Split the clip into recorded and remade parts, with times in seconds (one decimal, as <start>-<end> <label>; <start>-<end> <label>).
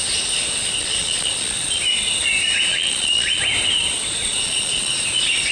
0.0-0.8 recorded; 0.8-1.8 remade; 1.8-2.7 recorded; 2.7-3.4 remade; 3.4-4.2 recorded; 4.2-4.9 remade; 4.9-5.5 recorded